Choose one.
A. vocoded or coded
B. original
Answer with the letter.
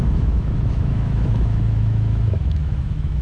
A